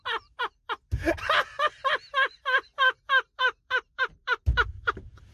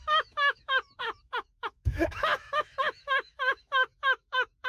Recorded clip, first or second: first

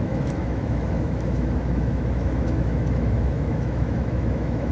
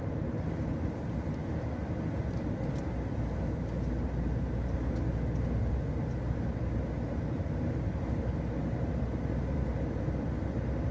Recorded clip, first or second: second